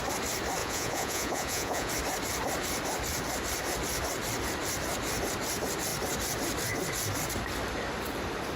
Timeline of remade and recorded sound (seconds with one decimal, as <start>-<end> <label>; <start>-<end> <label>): 0.0-0.6 recorded; 0.6-1.9 remade; 1.9-8.6 recorded